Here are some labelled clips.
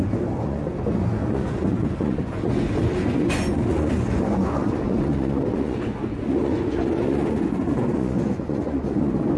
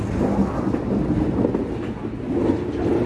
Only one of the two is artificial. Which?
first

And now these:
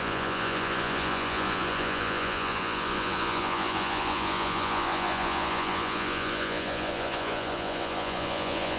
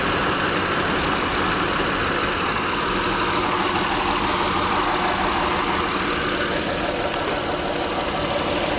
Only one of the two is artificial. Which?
first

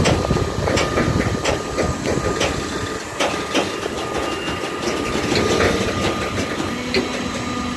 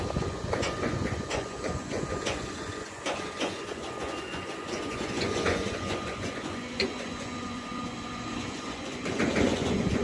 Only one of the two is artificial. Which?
second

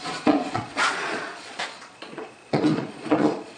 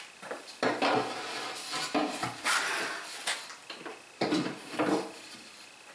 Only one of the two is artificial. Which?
first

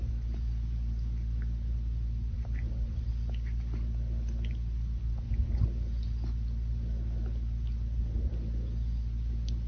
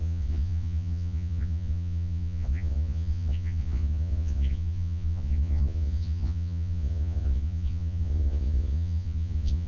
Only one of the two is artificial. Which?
second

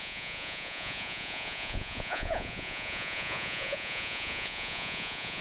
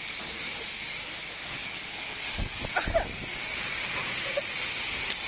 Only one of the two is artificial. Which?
first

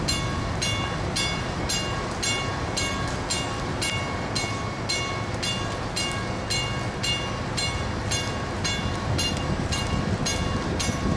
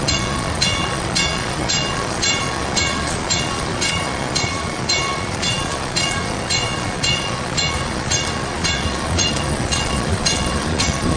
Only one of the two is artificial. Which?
second